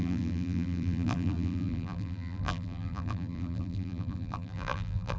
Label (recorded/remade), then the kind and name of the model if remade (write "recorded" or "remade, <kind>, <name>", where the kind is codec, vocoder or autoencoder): remade, vocoder, BigVGAN v2